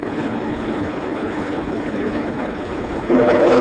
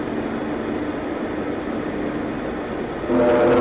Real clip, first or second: second